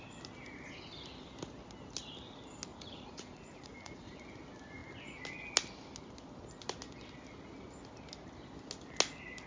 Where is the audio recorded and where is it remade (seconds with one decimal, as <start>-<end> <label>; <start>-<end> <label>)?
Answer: 0.0-2.7 recorded; 2.7-4.2 remade; 4.2-9.5 recorded